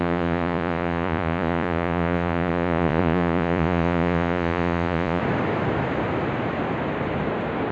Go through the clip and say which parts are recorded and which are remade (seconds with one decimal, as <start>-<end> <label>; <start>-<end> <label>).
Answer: 0.0-5.2 remade; 5.2-7.7 recorded